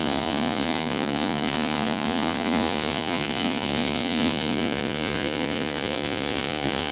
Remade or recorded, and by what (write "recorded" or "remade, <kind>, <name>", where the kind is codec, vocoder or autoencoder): remade, vocoder, Vocos